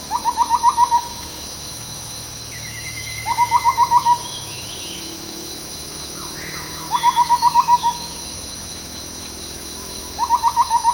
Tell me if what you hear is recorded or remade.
remade